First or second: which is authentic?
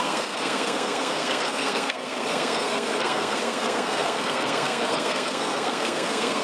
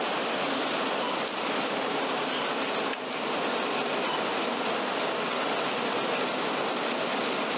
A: second